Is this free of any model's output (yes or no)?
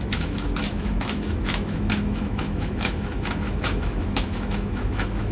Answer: no